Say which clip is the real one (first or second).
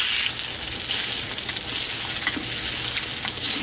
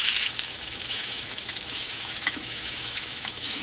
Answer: first